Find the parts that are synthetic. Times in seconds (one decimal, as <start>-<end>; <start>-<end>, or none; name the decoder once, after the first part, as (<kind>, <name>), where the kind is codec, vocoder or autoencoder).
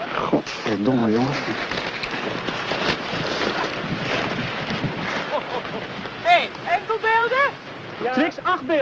1.0-4.5 (vocoder, BigVGAN v2); 6.2-7.6